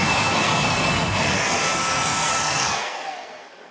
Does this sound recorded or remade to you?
remade